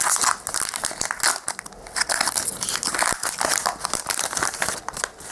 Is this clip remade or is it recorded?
recorded